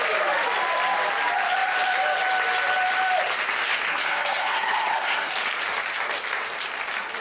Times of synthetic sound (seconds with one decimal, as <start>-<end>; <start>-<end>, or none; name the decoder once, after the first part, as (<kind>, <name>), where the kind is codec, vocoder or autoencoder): 3.9-5.3 (codec, SNAC)